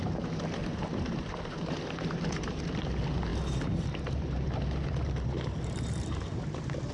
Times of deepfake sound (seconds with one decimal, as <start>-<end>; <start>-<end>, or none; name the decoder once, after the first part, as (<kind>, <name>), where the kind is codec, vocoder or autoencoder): 0.6-2.6 (vocoder, BigVGAN v2); 3.3-6.9